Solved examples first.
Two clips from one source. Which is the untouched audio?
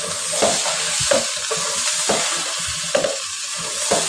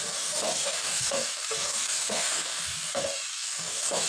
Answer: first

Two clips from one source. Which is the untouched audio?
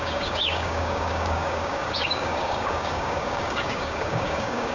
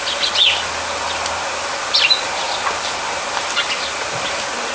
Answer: second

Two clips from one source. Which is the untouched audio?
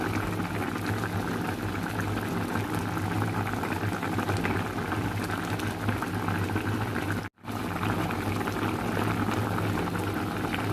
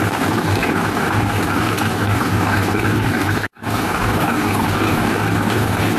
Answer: first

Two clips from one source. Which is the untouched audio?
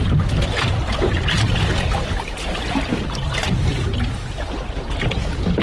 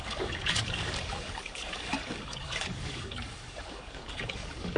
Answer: first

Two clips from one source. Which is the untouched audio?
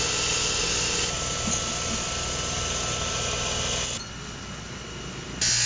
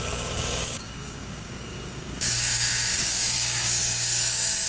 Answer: first